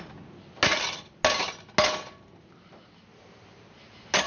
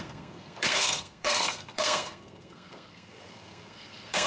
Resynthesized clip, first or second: second